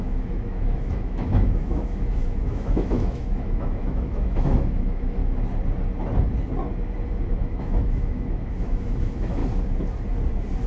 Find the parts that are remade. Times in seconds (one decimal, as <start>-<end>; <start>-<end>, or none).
0.0-5.2; 7.3-9.4